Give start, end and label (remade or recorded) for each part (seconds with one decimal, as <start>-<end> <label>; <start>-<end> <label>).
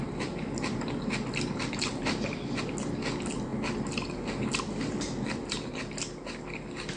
0.0-7.0 recorded